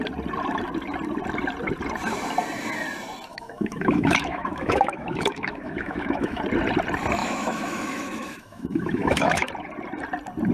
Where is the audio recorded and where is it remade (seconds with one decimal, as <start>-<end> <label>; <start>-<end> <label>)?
0.0-3.3 recorded; 3.3-6.4 remade; 6.4-7.2 recorded; 7.2-9.5 remade; 9.5-10.5 recorded